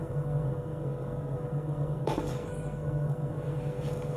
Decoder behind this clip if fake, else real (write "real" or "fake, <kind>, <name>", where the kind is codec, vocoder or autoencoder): fake, codec, SNAC